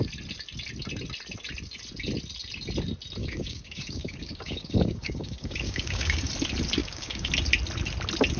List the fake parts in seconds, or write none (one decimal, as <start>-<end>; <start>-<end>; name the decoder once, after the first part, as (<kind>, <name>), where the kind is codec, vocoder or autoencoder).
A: 3.2-6.3 (codec, DAC); 6.8-7.3